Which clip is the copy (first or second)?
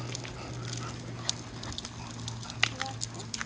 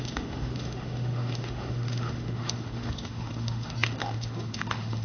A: second